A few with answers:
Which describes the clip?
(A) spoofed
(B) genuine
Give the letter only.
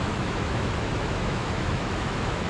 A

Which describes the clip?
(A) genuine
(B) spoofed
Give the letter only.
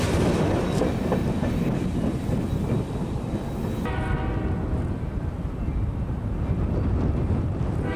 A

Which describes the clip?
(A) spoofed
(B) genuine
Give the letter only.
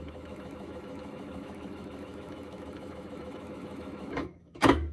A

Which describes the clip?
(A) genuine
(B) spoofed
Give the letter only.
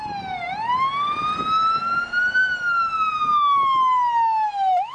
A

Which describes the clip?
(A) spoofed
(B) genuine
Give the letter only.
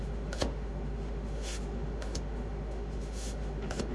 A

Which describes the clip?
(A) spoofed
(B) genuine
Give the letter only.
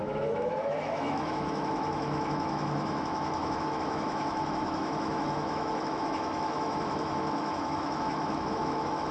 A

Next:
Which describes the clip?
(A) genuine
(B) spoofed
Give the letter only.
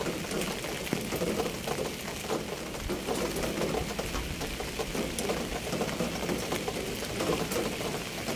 A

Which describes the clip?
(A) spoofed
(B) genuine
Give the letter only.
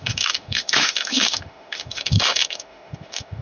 A